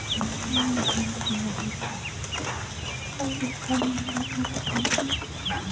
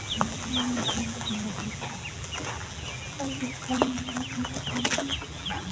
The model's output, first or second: second